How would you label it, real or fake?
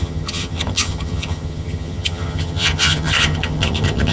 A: fake